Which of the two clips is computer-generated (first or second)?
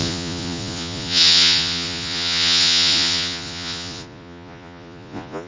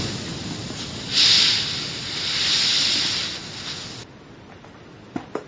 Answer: first